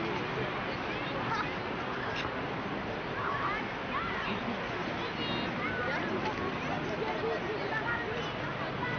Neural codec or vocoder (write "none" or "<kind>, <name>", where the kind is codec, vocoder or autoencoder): none